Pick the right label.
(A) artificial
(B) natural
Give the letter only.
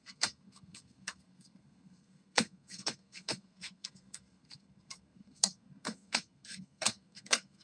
A